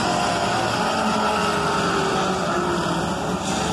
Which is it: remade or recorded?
recorded